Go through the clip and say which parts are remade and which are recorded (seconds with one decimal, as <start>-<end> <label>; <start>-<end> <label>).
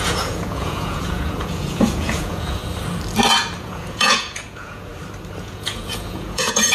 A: 0.0-2.6 remade; 2.6-3.6 recorded; 3.6-4.9 remade; 4.9-5.4 recorded; 5.4-6.7 remade